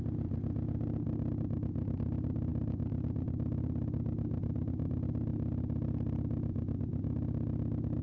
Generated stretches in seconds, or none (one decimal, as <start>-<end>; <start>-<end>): none